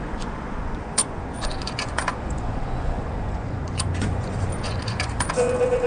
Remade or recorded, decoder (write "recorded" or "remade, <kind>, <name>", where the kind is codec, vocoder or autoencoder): remade, vocoder, Vocos